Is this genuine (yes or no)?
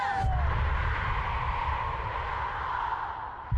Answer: no